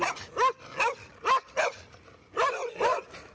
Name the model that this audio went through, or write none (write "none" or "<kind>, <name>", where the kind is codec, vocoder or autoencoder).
none